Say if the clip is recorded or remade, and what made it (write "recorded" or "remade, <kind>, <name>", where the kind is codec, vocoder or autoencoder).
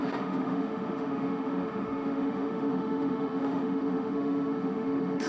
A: remade, autoencoder, DAC-VAE